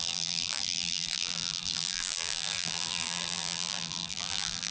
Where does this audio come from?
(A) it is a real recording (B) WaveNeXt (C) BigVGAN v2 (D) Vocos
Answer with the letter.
C